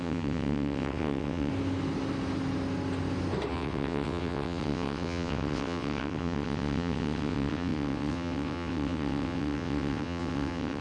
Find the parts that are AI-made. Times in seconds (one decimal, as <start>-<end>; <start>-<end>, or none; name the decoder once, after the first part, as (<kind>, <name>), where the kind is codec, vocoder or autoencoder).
0.0-1.5 (vocoder, WaveNeXt); 3.5-10.8